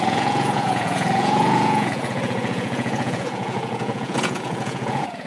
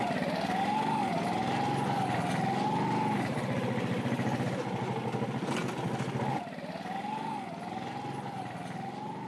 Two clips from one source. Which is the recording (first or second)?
second